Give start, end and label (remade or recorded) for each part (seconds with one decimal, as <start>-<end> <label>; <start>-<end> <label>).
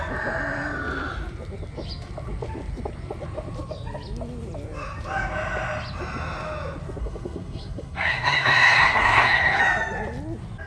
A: 0.0-7.0 recorded; 7.0-9.6 remade; 9.6-10.7 recorded